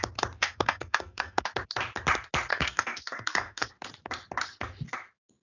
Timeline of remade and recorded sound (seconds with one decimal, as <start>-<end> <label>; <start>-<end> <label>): 0.0-0.4 recorded; 0.4-1.5 remade; 1.5-2.5 recorded; 2.5-3.7 remade; 3.7-5.4 recorded